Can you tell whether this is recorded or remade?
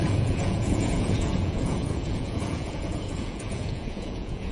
remade